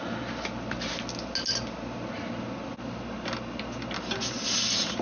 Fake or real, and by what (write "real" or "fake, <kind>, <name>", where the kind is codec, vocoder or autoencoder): real